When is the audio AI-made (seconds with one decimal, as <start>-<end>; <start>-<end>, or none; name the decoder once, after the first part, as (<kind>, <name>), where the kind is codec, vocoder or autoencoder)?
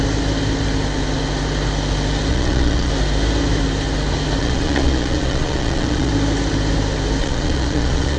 2.3-2.9 (vocoder, Vocos); 4.4-6.1; 7.2-8.2